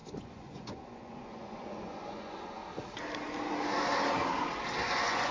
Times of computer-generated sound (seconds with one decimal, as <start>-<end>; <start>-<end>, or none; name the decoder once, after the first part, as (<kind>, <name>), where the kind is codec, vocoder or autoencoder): 0.0-2.6 (vocoder, Vocos); 4.8-5.3